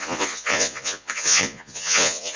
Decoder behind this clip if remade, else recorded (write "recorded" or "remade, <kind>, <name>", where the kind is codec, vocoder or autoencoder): remade, vocoder, Vocos